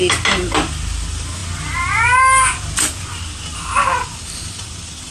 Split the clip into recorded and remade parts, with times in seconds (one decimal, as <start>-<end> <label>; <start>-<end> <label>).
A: 0.0-5.1 recorded